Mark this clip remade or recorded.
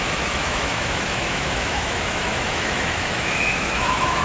remade